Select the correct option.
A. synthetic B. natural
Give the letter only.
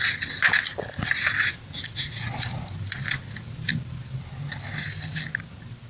B